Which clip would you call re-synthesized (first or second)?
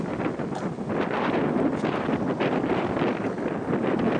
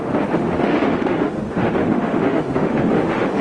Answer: second